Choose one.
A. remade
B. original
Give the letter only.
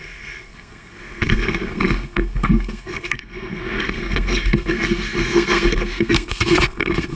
A